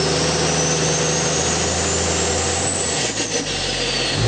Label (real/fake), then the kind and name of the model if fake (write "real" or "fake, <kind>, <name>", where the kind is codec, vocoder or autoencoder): real